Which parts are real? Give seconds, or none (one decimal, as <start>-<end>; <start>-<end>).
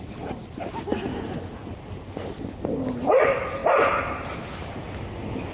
0.0-5.5